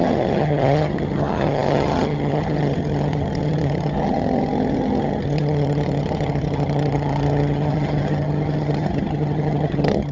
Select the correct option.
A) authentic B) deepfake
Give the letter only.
B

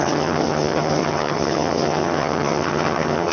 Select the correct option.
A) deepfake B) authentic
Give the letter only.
A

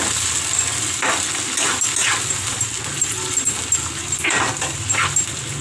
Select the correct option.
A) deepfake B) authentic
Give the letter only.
B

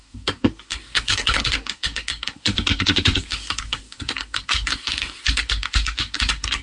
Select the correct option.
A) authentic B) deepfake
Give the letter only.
B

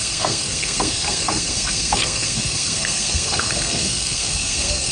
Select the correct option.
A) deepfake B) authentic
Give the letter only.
A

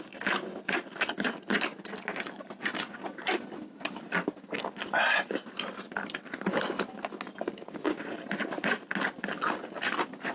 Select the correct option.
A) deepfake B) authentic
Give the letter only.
B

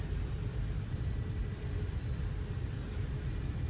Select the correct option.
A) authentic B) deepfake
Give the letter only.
A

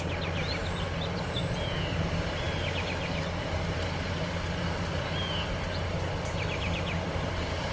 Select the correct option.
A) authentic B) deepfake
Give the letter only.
A